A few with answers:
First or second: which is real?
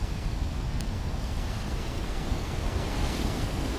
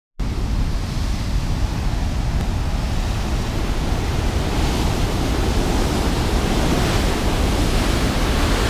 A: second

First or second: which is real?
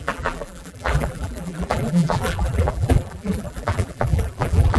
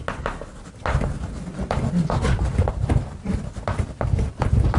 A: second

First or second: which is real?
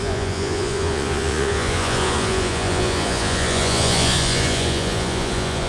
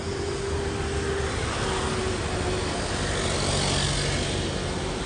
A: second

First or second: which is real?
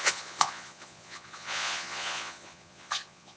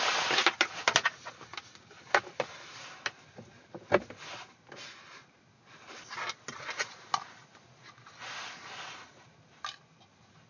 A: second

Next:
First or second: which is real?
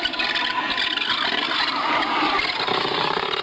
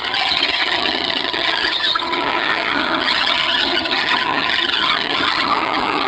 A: first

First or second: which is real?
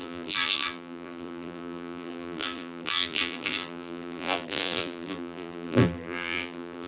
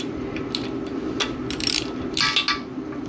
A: second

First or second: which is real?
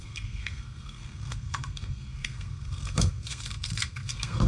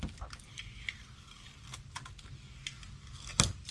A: second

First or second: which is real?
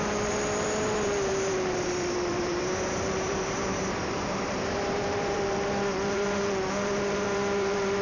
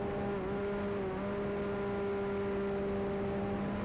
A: second